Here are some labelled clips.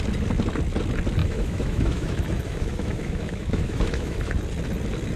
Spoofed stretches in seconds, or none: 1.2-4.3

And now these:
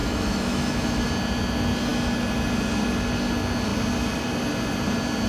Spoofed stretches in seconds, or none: 0.0-1.1

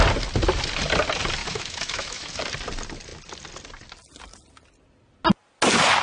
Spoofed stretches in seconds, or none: 1.4-2.3

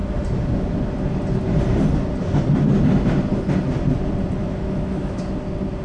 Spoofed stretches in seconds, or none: 4.4-5.2

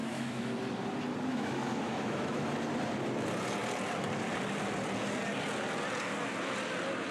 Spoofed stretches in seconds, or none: 0.0-0.5; 1.3-2.5

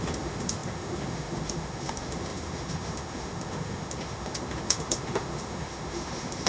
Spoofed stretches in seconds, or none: 0.0-6.5

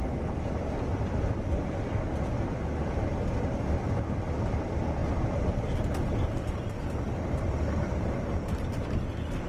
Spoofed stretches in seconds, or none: none